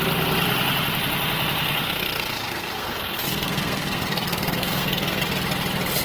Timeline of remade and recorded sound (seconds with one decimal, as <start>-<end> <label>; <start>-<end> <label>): 0.0-1.6 recorded; 1.6-5.2 remade; 5.2-6.0 recorded